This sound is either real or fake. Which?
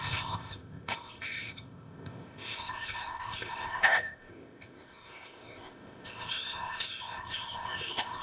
fake